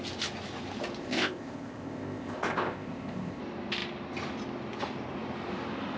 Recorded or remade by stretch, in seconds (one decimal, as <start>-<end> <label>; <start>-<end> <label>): 0.0-1.0 recorded; 1.0-3.4 remade; 3.4-6.0 recorded

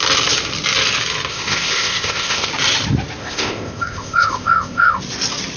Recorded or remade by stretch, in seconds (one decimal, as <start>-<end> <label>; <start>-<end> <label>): 0.0-1.3 recorded; 1.3-2.5 remade; 2.5-3.2 recorded; 3.2-5.0 remade; 5.0-5.6 recorded

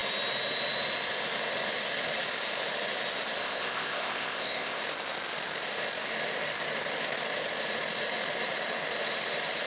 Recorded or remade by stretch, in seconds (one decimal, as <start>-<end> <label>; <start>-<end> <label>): 0.0-3.4 recorded; 3.4-4.8 remade; 4.8-9.7 recorded

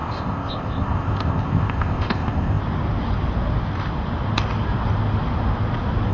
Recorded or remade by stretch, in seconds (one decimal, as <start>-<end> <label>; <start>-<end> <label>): 0.0-2.6 remade; 2.6-6.1 recorded

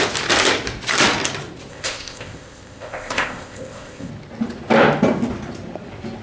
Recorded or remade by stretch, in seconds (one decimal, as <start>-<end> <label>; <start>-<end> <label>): 0.0-1.7 recorded; 1.7-4.1 remade; 4.1-6.2 recorded

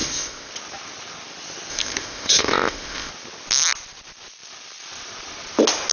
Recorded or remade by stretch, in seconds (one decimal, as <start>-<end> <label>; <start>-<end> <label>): 0.0-0.5 remade; 0.5-1.7 recorded; 1.7-3.1 remade; 3.1-5.9 recorded

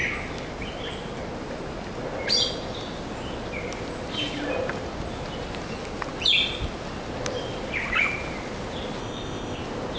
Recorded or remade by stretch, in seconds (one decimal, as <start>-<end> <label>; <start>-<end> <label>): 0.0-9.0 recorded; 9.0-9.6 remade; 9.6-10.0 recorded